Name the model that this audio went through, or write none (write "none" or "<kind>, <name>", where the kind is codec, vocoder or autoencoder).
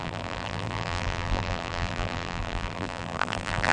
vocoder, BigVGAN v2